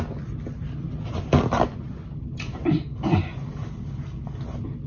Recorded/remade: recorded